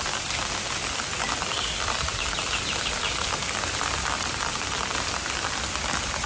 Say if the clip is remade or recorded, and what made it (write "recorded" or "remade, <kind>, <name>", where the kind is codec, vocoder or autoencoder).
recorded